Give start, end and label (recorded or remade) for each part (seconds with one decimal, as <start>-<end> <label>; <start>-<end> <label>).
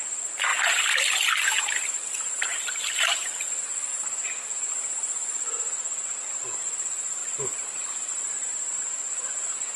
0.0-0.5 recorded; 0.5-1.4 remade; 1.4-2.5 recorded; 2.5-3.5 remade; 3.5-9.8 recorded